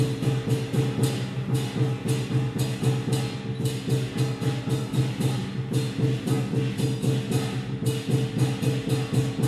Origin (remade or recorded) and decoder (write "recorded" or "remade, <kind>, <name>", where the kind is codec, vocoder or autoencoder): recorded